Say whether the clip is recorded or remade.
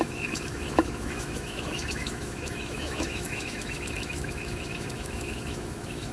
remade